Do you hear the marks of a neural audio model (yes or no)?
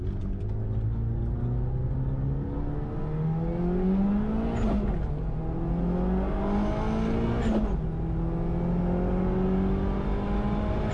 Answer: no